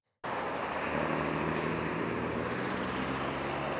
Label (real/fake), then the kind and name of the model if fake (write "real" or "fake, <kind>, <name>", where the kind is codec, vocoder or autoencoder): real